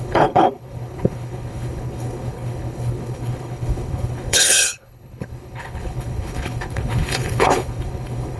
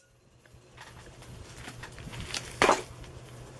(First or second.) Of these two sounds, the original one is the second